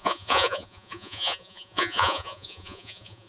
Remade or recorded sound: remade